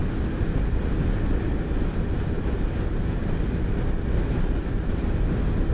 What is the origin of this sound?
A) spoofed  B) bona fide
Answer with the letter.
B